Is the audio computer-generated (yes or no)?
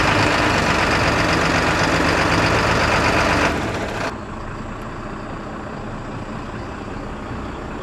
no